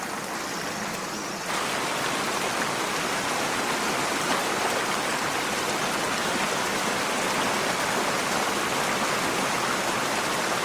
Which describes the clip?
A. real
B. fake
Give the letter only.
A